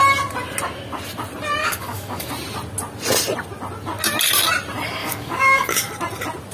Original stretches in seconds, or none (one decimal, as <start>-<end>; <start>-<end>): 0.0-1.6; 2.3-5.0; 5.9-6.5